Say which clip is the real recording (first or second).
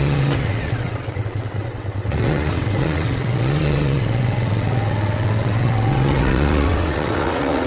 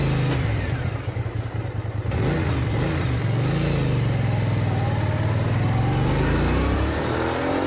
second